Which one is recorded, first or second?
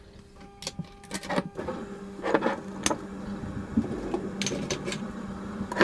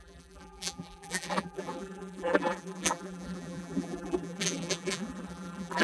first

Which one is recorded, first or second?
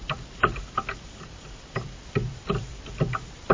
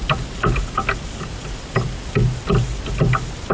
second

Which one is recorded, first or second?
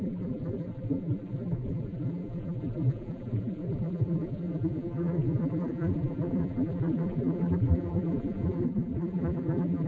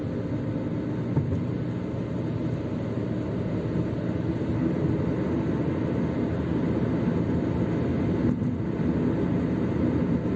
second